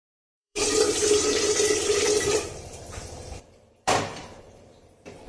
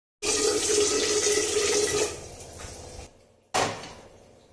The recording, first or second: second